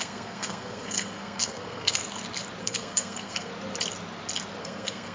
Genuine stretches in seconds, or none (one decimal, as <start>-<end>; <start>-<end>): 2.0-2.6; 3.5-4.6